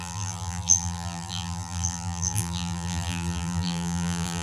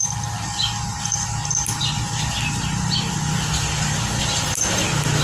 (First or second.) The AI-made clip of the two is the first